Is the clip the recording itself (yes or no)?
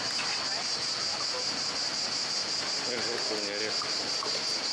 yes